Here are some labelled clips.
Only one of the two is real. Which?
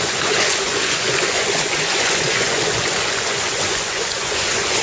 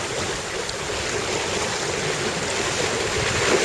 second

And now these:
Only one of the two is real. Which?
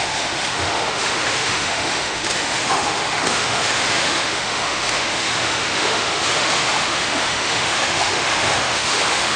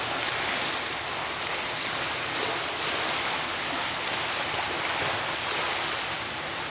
second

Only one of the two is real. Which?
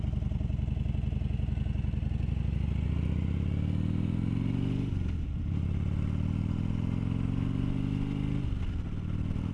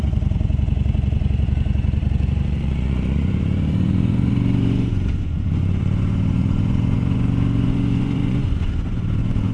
first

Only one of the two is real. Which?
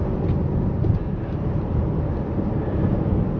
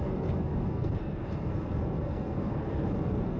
first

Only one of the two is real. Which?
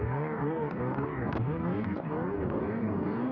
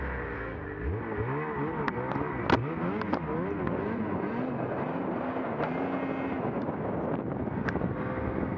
second